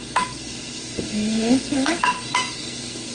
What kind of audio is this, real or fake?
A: fake